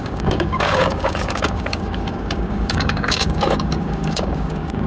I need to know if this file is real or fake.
fake